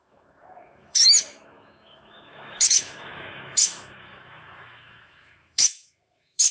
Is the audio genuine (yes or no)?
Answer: no